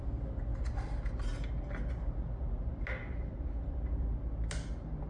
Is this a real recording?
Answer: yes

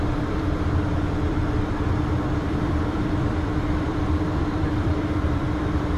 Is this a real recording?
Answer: no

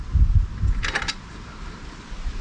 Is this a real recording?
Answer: no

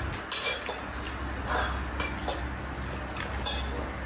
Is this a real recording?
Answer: yes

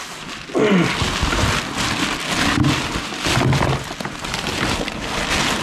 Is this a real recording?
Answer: yes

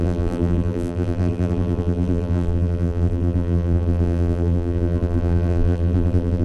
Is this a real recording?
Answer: no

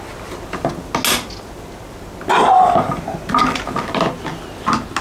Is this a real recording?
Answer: yes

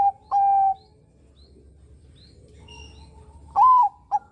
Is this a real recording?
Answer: yes